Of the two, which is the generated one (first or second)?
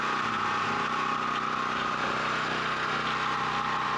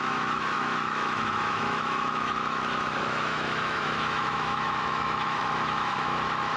second